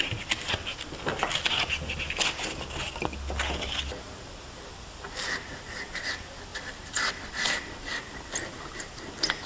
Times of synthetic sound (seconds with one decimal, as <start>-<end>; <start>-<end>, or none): none